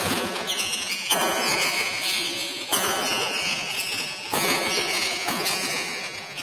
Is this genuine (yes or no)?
no